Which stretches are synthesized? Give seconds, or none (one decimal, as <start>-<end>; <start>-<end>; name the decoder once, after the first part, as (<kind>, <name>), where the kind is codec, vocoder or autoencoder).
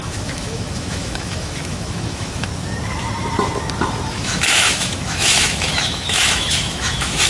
0.0-2.5 (autoencoder, DAC-VAE); 4.1-7.3